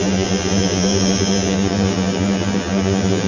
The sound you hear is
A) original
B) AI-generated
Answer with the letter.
B